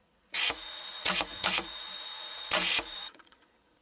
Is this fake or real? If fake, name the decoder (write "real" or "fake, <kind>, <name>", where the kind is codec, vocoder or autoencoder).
fake, vocoder, Vocos